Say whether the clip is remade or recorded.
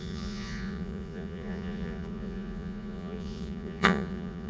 remade